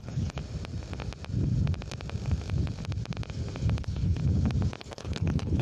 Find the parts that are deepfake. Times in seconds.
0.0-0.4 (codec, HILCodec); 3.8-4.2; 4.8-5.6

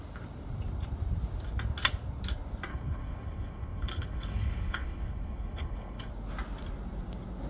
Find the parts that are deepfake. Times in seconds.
2.7-6.1 (codec, HILCodec)

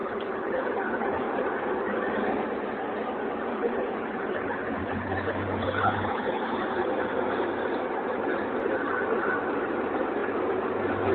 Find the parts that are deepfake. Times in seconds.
0.0-1.4 (codec, HILCodec); 3.5-6.7

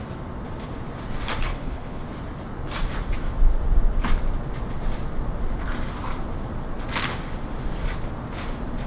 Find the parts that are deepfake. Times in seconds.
1.5-2.0 (codec, HILCodec)

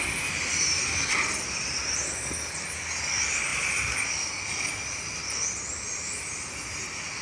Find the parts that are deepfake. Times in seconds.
none